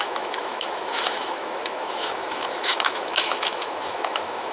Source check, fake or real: fake